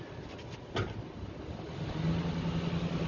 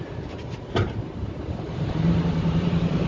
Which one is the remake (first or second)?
second